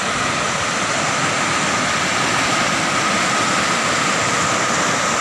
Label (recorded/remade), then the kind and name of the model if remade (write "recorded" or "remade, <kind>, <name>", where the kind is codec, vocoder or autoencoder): recorded